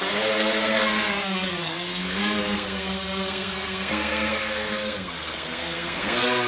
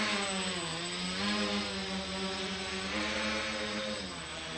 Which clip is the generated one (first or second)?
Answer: first